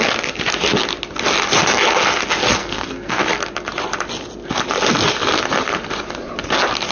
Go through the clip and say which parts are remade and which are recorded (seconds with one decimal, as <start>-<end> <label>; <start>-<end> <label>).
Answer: 0.0-2.6 recorded; 2.6-3.2 remade; 3.2-6.9 recorded